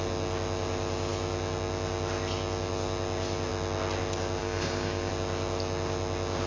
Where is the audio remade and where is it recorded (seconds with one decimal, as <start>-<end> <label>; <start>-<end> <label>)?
0.0-4.4 recorded; 4.4-5.1 remade; 5.1-6.5 recorded